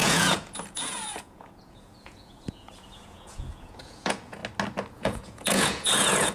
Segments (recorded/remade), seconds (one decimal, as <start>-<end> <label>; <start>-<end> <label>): 0.0-4.4 remade; 4.4-4.9 recorded; 4.9-6.3 remade